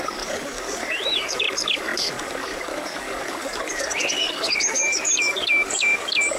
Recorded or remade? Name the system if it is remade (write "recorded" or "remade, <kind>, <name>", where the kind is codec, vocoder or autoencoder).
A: remade, codec, DAC